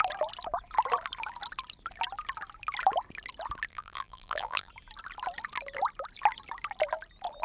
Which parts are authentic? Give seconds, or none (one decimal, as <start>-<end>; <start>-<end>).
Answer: 0.0-3.7; 4.7-7.4